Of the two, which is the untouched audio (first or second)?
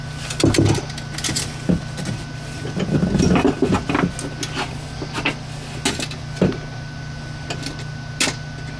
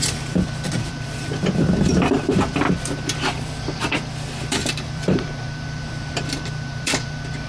first